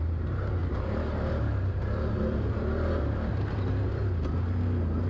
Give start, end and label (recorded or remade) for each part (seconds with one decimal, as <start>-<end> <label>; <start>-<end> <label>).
0.0-0.6 recorded; 0.6-3.7 remade; 3.7-5.1 recorded